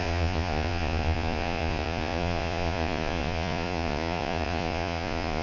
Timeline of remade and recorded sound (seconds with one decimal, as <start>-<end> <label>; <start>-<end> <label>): 0.0-5.4 remade